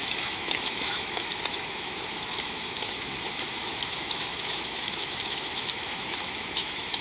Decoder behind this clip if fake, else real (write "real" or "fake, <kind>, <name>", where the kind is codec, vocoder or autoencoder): fake, autoencoder, DAC-VAE